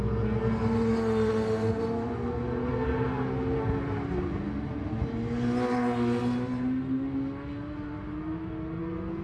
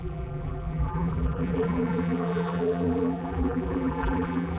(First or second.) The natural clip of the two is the first